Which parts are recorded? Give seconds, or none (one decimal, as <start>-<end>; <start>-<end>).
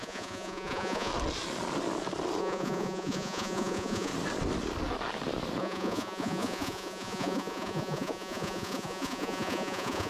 1.1-2.4; 4.1-5.6